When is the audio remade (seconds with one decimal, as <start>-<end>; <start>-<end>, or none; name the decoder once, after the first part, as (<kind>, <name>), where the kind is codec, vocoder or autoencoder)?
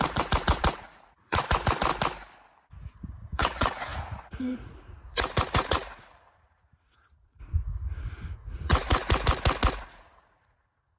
0.0-1.9 (vocoder, Vocos); 3.0-9.0; 9.8-11.0